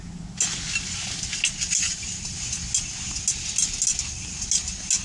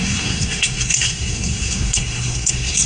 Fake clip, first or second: second